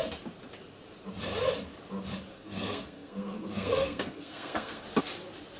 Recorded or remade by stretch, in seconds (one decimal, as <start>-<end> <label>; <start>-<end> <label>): 0.0-2.3 recorded; 2.3-4.8 remade; 4.8-5.6 recorded